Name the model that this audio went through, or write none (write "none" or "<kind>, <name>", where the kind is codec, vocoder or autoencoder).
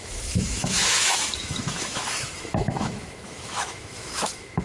autoencoder, DAC-VAE